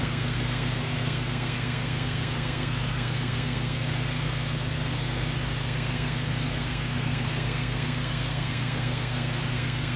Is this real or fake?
fake